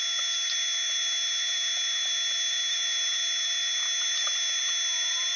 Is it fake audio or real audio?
real